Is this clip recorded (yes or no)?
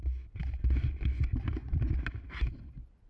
yes